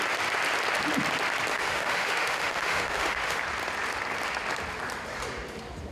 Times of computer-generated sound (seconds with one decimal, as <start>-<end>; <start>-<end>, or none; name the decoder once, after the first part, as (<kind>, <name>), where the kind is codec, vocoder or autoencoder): 1.5-3.4 (autoencoder, DAC-VAE)